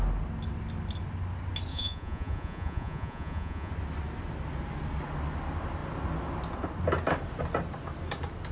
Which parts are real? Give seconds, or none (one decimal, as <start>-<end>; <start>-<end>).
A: 0.0-1.7; 3.7-8.5